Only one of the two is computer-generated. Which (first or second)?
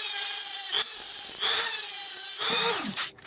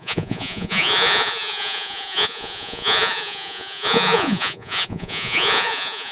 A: second